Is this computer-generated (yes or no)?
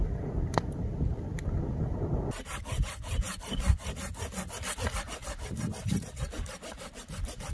no